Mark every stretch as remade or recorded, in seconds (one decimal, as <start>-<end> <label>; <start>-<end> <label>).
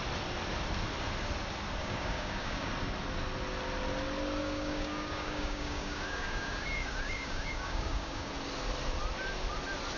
0.0-1.8 recorded; 1.8-2.7 remade; 2.7-4.4 recorded; 4.4-8.3 remade; 8.3-10.0 recorded